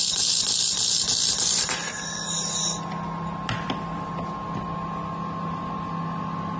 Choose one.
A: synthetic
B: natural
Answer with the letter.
B